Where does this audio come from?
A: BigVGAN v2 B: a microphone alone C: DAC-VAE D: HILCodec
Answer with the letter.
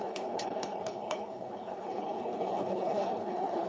D